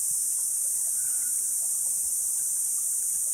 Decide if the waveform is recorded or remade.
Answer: remade